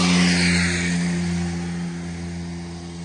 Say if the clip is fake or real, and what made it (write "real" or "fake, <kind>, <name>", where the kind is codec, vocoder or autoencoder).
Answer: real